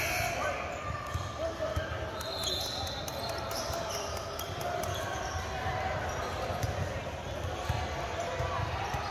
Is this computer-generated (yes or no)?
no